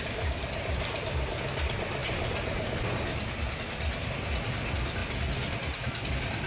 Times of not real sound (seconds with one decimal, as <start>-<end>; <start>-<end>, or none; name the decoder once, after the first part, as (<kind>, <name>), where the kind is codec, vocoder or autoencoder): none